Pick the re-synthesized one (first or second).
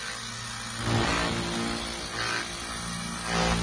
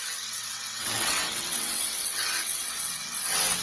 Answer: second